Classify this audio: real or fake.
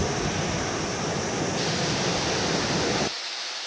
real